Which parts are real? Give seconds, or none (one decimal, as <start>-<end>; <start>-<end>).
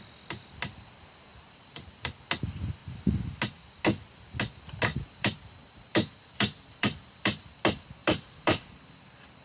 0.0-1.3; 2.1-4.9; 7.5-8.0; 8.6-9.4